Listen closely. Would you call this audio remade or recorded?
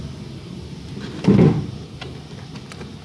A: recorded